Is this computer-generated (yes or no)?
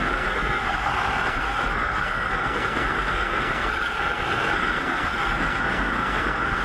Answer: yes